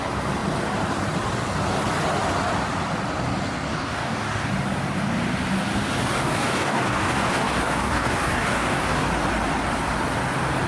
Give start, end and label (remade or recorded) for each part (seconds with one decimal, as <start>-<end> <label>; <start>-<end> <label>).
0.0-3.7 recorded; 3.7-4.5 remade; 4.5-6.2 recorded; 6.2-9.0 remade; 9.0-10.7 recorded